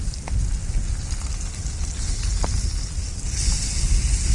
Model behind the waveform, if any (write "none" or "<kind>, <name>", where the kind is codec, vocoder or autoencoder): none